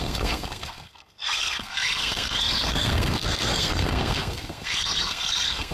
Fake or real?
fake